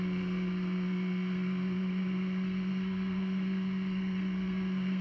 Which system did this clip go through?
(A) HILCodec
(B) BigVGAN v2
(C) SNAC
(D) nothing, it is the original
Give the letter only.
C